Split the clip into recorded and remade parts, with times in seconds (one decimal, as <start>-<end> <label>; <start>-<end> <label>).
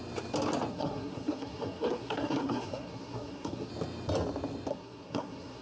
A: 0.0-0.7 recorded; 0.7-3.7 remade; 3.7-4.7 recorded; 4.7-5.6 remade